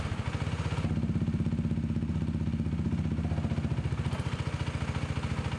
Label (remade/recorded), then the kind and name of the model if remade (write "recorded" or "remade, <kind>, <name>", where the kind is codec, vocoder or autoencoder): recorded